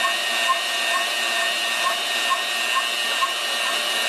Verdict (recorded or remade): recorded